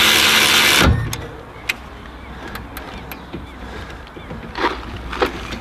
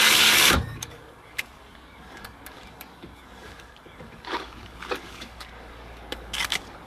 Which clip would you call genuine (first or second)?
first